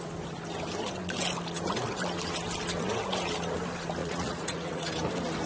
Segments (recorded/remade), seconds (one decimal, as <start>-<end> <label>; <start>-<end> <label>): 0.0-4.0 recorded; 4.0-4.9 remade; 4.9-5.5 recorded